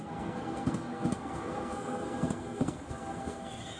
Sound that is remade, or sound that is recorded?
remade